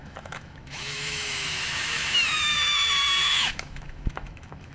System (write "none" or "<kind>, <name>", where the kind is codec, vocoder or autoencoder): autoencoder, DAC-VAE